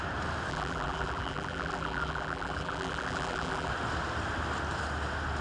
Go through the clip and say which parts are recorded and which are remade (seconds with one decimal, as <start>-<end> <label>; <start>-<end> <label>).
0.0-0.5 recorded; 0.5-3.7 remade; 3.7-5.4 recorded